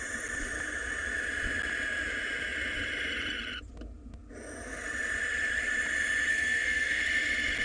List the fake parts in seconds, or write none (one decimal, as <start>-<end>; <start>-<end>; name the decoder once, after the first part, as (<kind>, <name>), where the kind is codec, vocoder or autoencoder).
6.3-7.0 (codec, SNAC)